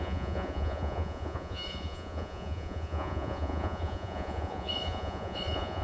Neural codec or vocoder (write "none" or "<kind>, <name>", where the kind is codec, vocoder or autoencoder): vocoder, Vocos